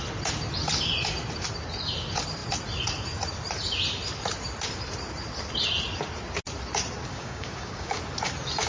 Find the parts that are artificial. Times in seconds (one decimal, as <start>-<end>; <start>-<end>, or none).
7.1-8.0